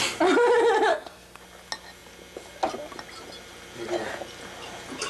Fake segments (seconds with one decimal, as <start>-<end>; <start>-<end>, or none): 0.9-1.4